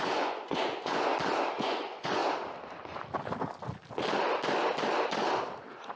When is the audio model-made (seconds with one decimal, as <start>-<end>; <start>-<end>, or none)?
0.0-1.1; 1.6-2.2

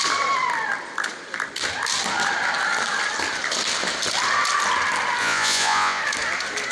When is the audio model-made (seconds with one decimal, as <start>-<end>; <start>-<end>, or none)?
5.2-6.0

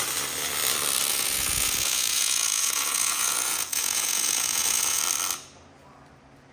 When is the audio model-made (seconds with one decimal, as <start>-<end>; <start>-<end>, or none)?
1.1-5.0

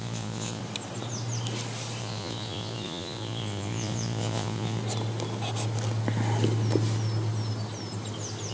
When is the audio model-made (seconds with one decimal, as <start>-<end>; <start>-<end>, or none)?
0.0-0.6; 2.0-4.8

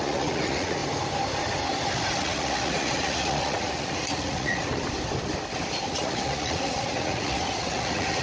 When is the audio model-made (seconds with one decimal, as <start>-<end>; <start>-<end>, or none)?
0.0-0.8; 1.9-4.7; 5.9-8.2

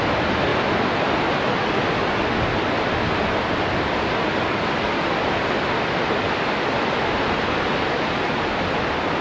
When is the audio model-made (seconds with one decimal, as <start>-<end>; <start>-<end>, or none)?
none